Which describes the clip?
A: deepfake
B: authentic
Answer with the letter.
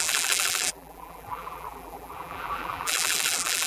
A